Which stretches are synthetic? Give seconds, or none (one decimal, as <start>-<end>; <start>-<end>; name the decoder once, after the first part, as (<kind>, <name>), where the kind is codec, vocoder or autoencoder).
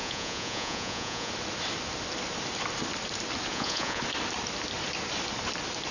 0.0-1.3 (vocoder, Vocos); 3.5-4.0